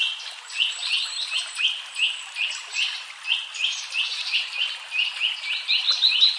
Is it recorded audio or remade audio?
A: recorded